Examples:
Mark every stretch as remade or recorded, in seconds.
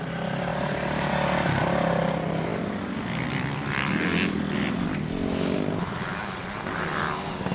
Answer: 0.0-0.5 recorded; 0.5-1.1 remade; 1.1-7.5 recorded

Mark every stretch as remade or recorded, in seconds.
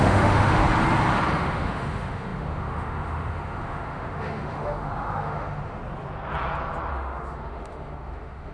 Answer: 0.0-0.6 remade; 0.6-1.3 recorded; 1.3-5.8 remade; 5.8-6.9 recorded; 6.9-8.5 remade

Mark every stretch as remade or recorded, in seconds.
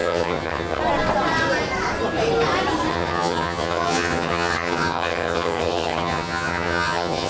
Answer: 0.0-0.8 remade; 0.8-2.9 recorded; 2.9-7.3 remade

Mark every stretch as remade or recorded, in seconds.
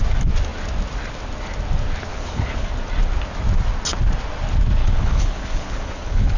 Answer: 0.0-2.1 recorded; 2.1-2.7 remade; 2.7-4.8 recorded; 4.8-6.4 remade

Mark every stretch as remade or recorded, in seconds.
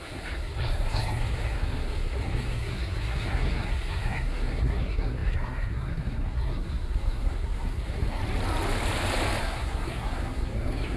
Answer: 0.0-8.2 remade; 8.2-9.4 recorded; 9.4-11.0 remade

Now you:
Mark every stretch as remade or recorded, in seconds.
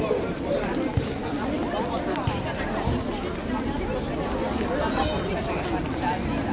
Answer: 0.0-6.5 recorded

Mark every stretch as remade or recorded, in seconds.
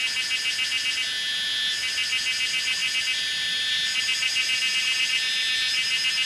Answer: 0.0-6.3 recorded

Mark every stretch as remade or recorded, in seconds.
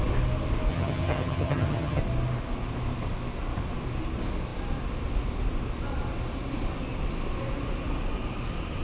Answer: 0.0-0.7 recorded; 0.7-2.0 remade; 2.0-8.8 recorded